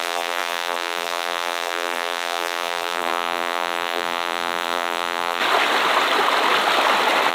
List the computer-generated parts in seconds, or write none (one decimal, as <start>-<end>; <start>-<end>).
0.0-5.4